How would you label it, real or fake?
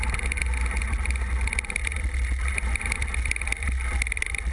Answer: real